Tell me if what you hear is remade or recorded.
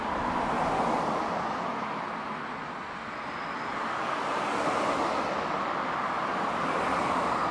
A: recorded